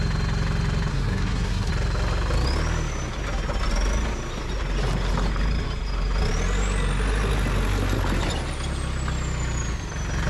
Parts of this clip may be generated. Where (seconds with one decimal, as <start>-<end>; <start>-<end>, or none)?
0.9-1.7